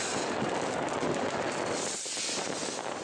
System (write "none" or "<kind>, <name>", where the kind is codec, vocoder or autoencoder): none